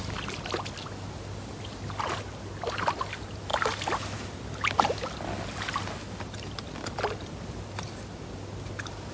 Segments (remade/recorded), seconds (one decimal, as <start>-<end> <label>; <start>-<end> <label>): 0.0-9.1 recorded